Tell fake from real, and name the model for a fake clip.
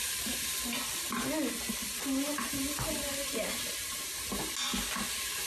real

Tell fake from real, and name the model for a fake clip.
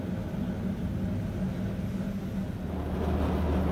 real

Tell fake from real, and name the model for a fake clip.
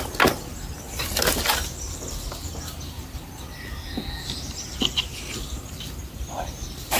real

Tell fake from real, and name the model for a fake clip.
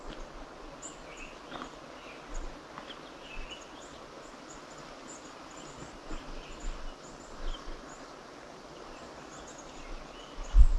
real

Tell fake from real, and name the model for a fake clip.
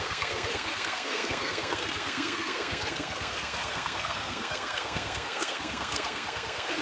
fake, codec, SNAC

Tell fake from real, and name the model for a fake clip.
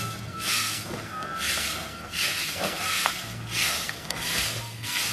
fake, codec, SNAC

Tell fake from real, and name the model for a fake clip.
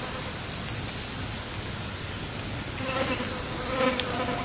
real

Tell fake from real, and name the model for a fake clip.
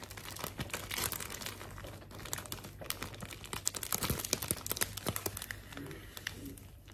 real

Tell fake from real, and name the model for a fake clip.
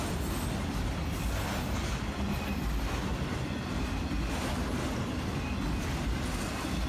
real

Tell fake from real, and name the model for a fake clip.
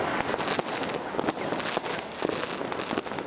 real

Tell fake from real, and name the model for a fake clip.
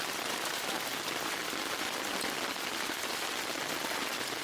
real